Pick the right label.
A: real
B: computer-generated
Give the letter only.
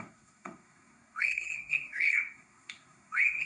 B